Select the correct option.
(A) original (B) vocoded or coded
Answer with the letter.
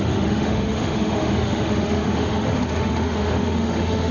B